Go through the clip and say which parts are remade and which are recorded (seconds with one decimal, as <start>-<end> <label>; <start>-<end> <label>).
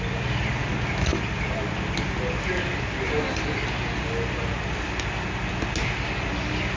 0.0-6.8 recorded